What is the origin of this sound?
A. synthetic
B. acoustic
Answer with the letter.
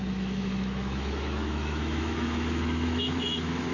A